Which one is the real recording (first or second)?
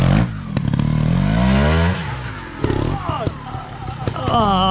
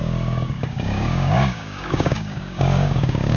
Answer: first